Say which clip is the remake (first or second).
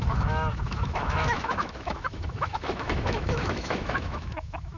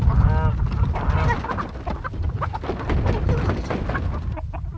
first